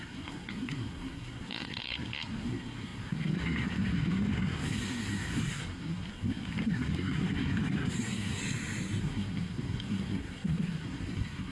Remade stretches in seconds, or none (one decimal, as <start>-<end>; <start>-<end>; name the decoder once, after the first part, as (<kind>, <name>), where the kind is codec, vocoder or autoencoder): 0.0-8.4 (codec, SNAC); 9.0-11.5

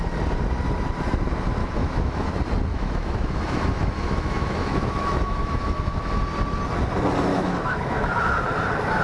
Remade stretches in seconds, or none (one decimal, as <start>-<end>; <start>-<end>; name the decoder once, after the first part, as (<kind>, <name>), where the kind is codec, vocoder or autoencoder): 1.6-2.3 (autoencoder, DAC-VAE); 2.7-6.2; 7.3-8.2